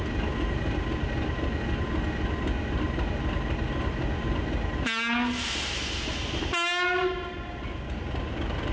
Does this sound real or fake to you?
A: real